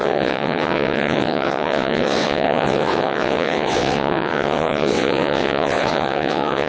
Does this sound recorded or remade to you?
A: remade